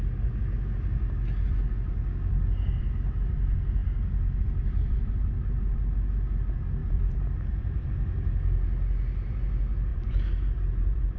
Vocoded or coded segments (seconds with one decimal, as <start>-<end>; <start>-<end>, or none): 6.8-7.9; 9.9-11.2